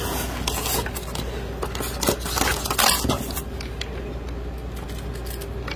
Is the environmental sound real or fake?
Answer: real